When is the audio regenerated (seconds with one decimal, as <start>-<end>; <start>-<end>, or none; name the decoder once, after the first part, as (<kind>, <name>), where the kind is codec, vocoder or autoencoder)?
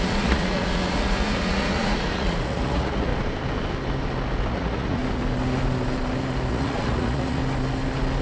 0.0-3.1 (vocoder, Vocos); 4.5-5.0; 6.5-7.4